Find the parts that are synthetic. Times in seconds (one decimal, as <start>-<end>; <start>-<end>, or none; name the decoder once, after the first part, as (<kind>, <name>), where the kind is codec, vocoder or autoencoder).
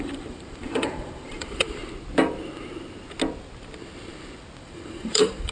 0.0-1.8 (vocoder, BigVGAN v2); 4.6-5.5